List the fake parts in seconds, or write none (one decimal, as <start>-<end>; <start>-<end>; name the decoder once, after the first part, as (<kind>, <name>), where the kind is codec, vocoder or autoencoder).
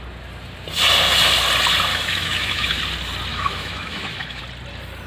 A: 1.9-2.8 (autoencoder, DAC-VAE); 3.3-4.4